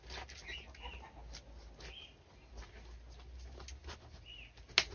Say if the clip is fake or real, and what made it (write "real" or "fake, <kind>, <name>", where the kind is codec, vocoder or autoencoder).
real